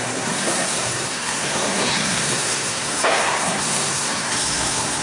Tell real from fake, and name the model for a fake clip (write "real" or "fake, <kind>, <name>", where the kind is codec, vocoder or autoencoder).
fake, codec, SNAC